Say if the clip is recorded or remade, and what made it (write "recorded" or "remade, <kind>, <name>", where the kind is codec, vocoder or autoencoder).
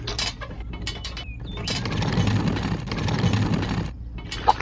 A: recorded